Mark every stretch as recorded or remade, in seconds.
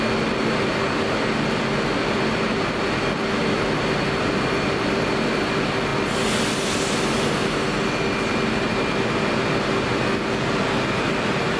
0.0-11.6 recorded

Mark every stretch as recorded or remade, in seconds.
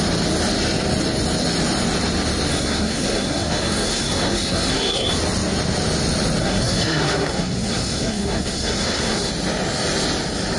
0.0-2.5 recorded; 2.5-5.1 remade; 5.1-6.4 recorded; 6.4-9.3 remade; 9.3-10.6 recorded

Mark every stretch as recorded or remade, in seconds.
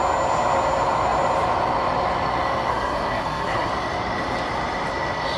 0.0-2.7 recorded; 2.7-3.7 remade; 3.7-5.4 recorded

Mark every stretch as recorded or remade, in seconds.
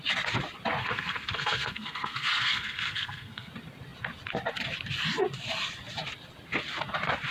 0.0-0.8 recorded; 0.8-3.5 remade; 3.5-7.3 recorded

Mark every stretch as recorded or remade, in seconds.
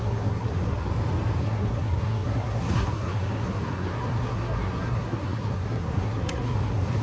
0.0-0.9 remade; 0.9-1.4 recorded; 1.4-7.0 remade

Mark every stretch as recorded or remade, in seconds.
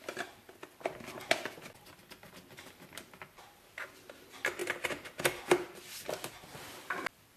0.0-7.4 recorded